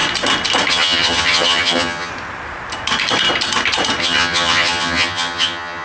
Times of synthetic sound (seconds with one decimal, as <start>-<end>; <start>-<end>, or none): 0.7-2.1; 4.0-5.8